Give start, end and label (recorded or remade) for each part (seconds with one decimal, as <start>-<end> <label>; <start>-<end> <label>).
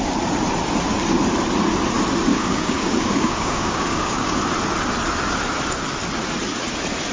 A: 0.0-2.3 recorded; 2.3-4.4 remade; 4.4-7.1 recorded